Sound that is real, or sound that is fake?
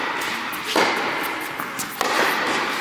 real